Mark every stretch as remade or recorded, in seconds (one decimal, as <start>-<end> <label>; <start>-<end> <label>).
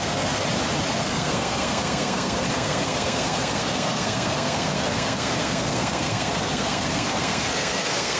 0.0-0.4 remade; 0.4-1.0 recorded; 1.0-8.2 remade